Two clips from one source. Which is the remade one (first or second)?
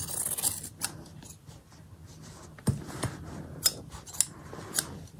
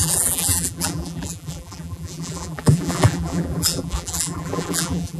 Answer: second